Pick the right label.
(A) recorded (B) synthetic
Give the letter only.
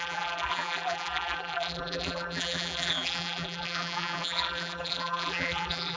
B